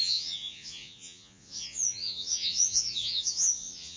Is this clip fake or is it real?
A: fake